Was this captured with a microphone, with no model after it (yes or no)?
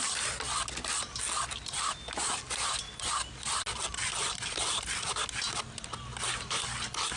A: yes